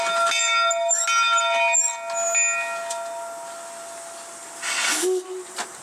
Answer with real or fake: real